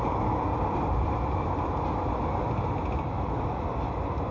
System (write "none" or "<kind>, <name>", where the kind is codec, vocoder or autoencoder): none